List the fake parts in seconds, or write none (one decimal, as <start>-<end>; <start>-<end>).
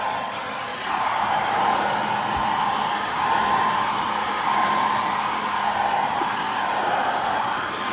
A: 0.7-1.9; 2.7-5.4